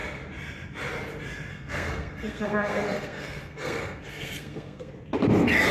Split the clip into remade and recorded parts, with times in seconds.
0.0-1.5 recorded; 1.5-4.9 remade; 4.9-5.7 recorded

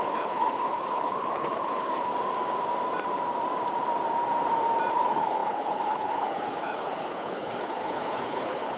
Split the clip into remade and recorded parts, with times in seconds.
0.0-2.1 remade; 2.1-4.9 recorded; 4.9-8.8 remade